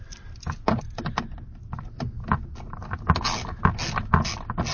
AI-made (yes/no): no